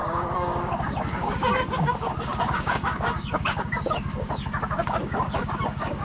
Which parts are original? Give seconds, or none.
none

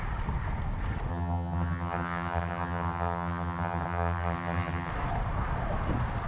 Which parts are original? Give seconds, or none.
0.0-1.1; 4.9-6.3

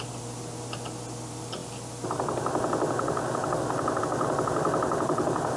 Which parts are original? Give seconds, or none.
0.0-5.6

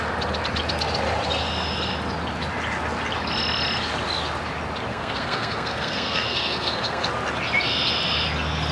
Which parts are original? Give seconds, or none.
0.0-4.9; 7.1-8.7